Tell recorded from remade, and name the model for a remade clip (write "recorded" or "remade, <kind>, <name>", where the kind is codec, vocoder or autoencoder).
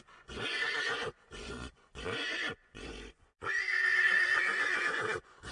remade, vocoder, Vocos